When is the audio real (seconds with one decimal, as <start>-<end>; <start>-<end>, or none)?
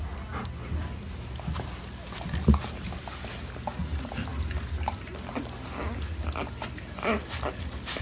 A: 0.0-8.0